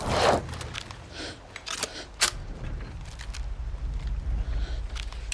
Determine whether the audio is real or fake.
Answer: real